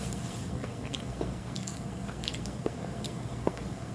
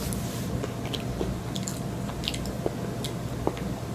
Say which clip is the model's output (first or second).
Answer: first